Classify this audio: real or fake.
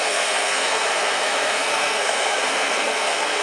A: fake